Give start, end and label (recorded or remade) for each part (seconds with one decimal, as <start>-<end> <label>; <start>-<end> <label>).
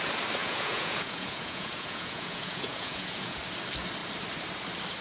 0.0-0.4 recorded; 0.4-3.4 remade; 3.4-5.0 recorded